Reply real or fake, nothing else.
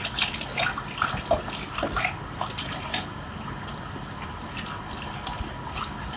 real